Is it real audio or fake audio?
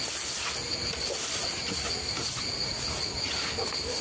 real